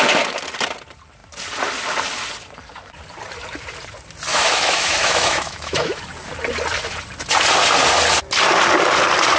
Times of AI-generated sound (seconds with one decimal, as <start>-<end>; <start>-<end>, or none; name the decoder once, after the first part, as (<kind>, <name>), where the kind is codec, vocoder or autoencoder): 4.3-6.0 (autoencoder, DAC-VAE)